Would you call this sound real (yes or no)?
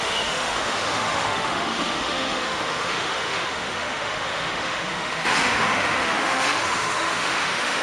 no